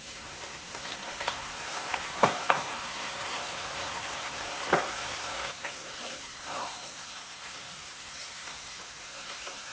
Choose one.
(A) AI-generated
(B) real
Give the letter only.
A